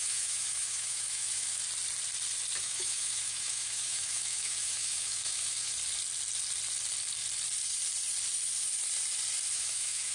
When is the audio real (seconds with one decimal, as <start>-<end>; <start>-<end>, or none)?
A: 1.6-2.6; 5.7-9.5